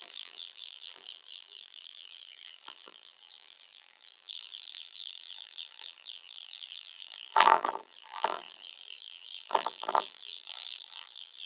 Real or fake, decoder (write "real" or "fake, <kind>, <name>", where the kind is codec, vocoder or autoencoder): fake, vocoder, BigVGAN v2